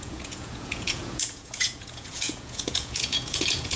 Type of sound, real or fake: fake